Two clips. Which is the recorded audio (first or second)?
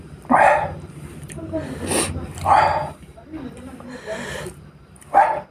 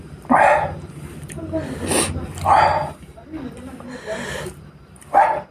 second